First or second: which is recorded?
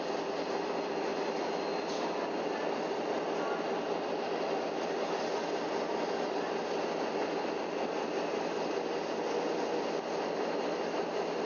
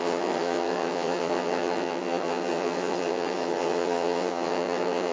first